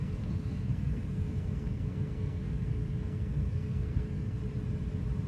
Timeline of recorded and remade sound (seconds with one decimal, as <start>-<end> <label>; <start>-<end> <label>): 0.0-4.4 remade; 4.4-5.3 recorded